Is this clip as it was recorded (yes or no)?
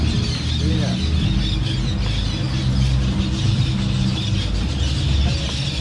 yes